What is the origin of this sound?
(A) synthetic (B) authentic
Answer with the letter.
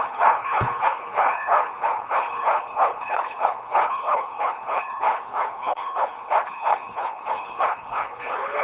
A